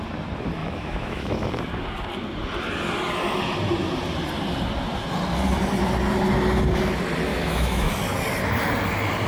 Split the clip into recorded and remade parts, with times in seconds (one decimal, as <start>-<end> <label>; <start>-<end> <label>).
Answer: 0.0-0.6 recorded; 0.6-1.6 remade; 1.6-7.3 recorded; 7.3-7.9 remade; 7.9-9.3 recorded